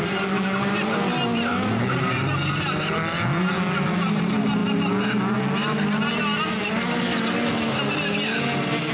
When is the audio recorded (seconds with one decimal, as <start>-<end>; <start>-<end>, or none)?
0.0-8.9